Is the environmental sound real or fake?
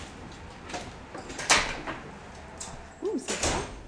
real